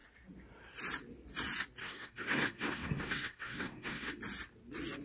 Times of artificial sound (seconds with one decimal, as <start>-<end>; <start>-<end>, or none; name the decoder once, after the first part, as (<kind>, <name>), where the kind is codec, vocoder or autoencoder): 1.8-4.2 (codec, SNAC)